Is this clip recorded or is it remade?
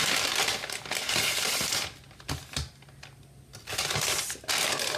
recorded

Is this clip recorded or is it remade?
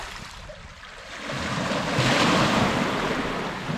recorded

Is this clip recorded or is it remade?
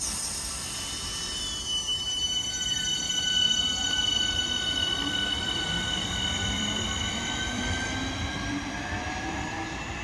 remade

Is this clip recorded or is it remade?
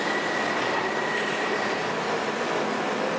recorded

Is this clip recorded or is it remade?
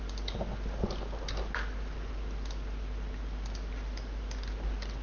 recorded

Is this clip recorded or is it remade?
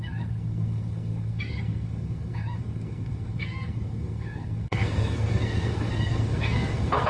remade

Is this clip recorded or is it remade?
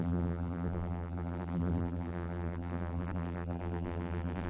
remade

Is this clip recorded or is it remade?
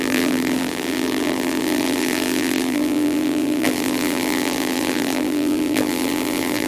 remade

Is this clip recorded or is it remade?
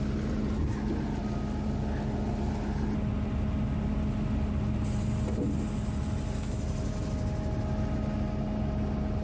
recorded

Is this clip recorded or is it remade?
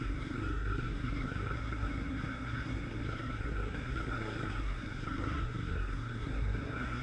remade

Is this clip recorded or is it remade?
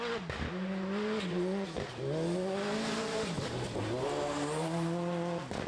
recorded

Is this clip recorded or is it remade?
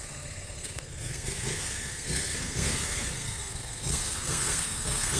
remade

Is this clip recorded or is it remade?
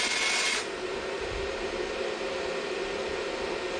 recorded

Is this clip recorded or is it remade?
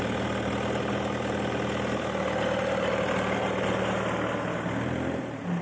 recorded